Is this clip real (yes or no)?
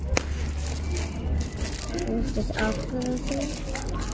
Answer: yes